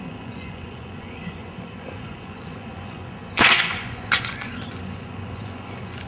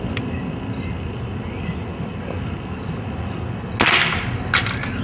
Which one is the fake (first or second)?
first